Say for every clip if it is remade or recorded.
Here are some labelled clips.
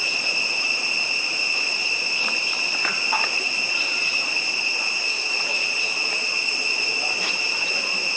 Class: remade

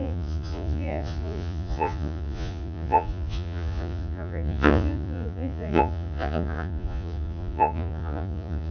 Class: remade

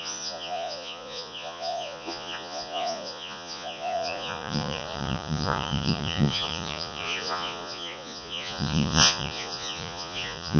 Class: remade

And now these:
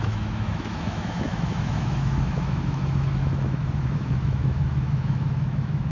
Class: remade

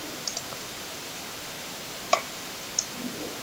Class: remade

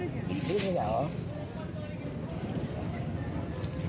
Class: recorded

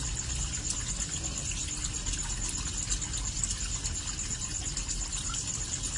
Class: recorded